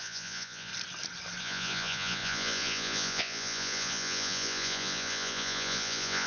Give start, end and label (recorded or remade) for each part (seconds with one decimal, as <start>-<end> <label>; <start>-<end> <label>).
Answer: 0.0-0.7 remade; 0.7-1.4 recorded; 1.4-6.3 remade